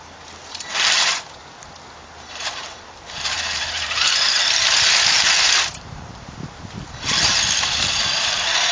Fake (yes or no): yes